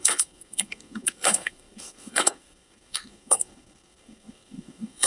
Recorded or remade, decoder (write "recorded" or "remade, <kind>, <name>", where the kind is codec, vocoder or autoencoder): remade, codec, SNAC